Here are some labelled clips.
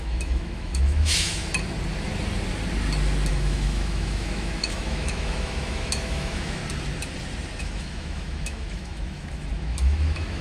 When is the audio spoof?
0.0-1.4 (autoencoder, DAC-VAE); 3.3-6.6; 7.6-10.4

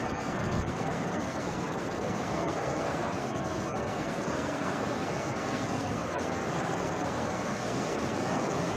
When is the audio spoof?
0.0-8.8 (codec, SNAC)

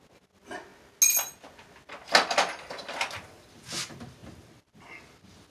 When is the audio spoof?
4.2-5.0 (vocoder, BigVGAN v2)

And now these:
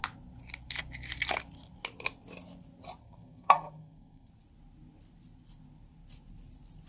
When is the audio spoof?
3.0-4.3 (codec, SNAC)

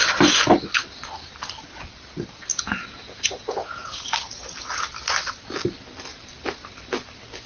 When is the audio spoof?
2.5-4.1 (vocoder, Vocos)